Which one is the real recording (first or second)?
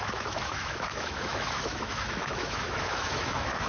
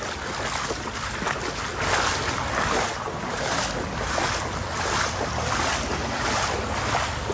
second